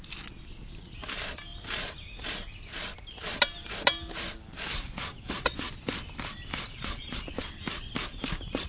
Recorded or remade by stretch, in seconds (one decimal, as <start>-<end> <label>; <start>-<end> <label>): 0.0-4.7 recorded; 4.7-5.6 remade; 5.6-6.5 recorded; 6.5-7.2 remade; 7.2-8.7 recorded